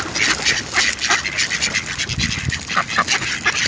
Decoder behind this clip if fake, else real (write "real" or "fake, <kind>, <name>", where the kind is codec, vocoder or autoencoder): real